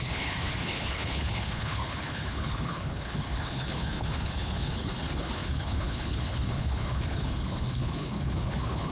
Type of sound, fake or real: fake